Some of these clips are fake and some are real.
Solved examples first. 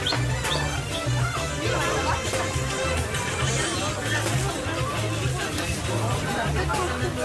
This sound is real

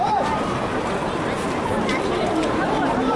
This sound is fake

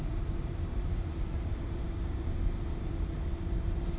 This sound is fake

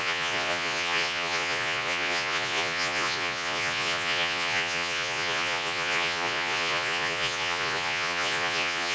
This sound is fake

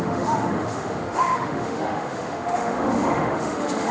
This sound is fake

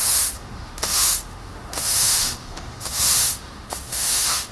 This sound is fake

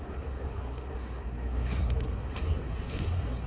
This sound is fake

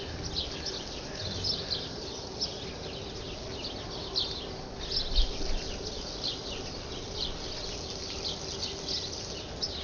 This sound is real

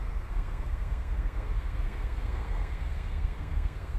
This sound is fake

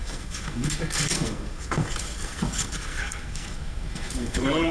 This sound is fake